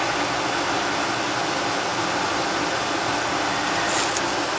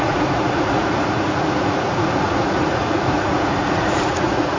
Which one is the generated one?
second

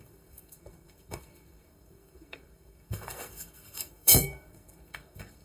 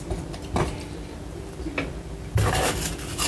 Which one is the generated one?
first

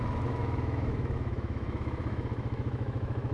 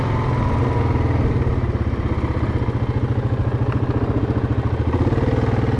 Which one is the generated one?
first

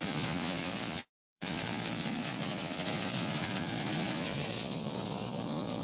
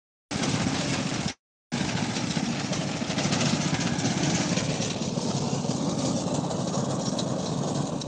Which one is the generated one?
first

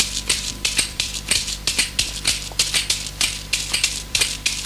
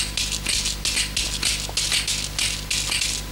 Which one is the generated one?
first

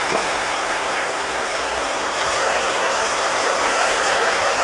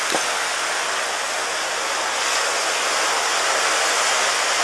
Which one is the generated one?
first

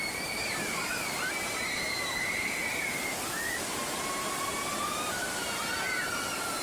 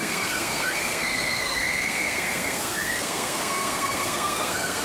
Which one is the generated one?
second